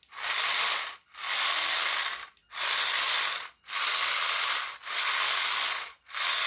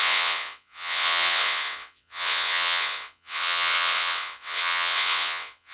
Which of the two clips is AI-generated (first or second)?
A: second